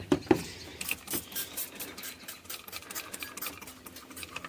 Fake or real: real